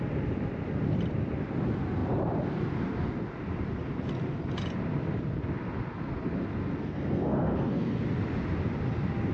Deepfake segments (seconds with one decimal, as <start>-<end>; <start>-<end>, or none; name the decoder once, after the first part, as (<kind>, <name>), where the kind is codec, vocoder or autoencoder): 6.8-8.0 (codec, SNAC)